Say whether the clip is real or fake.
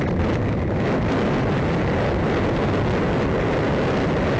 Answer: real